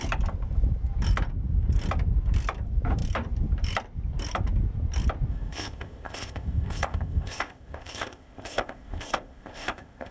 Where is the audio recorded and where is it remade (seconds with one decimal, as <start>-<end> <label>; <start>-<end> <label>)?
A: 0.0-5.3 recorded; 5.3-10.1 remade